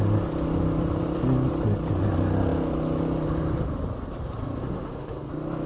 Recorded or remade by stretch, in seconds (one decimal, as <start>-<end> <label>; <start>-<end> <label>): 0.0-4.6 recorded; 4.6-5.3 remade; 5.3-5.7 recorded